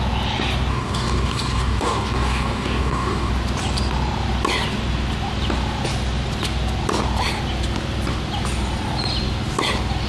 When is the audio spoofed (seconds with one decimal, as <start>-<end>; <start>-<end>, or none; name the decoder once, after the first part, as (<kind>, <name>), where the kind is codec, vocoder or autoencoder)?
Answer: 0.7-3.3 (codec, DAC)

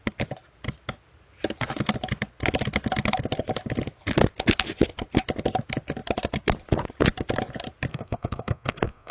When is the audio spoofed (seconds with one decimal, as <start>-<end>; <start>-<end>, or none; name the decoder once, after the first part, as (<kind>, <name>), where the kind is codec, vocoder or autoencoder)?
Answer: 7.9-9.1 (codec, SNAC)

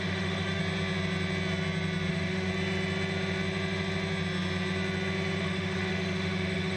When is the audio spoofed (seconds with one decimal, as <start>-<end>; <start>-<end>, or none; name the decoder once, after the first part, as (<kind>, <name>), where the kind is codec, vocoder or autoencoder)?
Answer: 0.0-0.6 (autoencoder, DAC-VAE); 2.1-2.5; 5.4-6.8

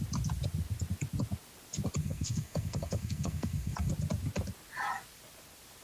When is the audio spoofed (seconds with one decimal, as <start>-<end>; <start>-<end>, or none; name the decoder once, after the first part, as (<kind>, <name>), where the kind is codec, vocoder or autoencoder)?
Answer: 2.0-3.9 (codec, SNAC)

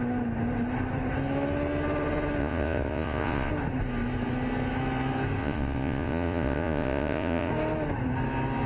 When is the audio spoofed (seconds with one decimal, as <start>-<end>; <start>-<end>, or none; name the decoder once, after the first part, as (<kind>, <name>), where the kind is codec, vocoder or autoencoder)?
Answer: 2.4-3.5 (vocoder, Vocos); 5.4-7.5